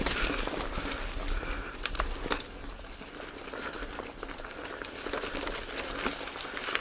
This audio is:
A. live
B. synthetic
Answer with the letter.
A